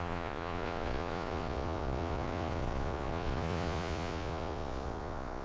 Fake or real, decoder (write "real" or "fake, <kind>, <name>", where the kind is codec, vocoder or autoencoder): fake, vocoder, Vocos